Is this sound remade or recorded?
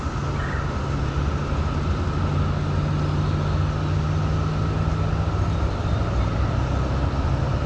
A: recorded